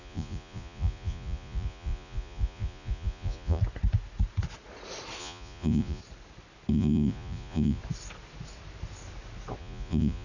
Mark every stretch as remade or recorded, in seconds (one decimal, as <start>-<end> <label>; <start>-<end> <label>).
0.0-3.6 remade; 3.6-5.2 recorded; 5.2-6.0 remade; 6.0-6.7 recorded; 6.7-7.8 remade; 7.8-9.6 recorded; 9.6-10.2 remade